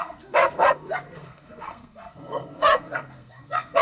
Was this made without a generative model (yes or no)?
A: no